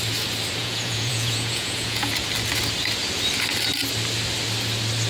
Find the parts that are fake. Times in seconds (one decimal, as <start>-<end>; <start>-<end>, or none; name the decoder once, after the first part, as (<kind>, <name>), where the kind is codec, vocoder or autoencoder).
0.6-2.1 (vocoder, Vocos)